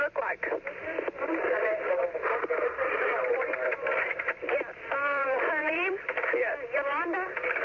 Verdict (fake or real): fake